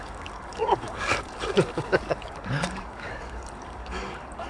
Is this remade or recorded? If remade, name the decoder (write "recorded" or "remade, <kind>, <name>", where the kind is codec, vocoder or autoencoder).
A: remade, codec, DAC